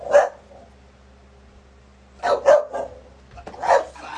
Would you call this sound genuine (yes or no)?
yes